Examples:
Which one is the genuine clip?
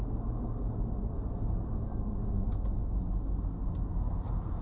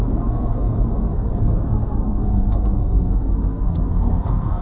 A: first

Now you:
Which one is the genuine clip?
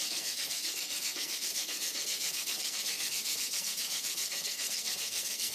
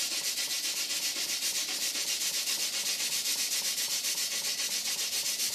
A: second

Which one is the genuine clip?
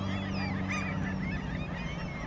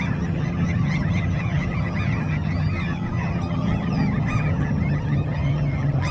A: first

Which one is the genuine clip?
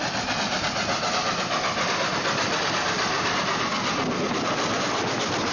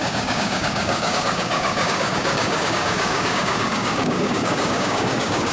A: first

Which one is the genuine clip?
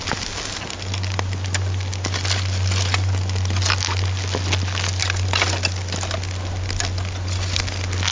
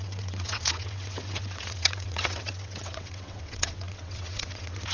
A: first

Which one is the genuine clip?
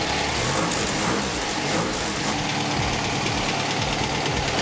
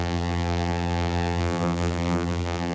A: first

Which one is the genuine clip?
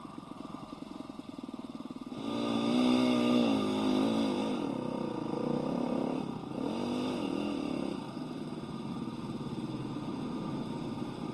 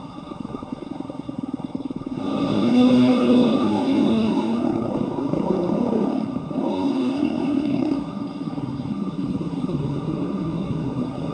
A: first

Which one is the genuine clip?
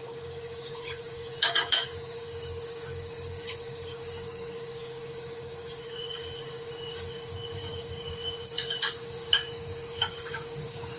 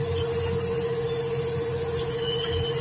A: second